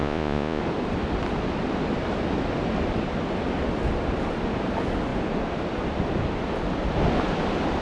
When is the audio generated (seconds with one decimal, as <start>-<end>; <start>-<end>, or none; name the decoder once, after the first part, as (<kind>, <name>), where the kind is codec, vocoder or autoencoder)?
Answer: 0.0-0.6 (vocoder, Vocos)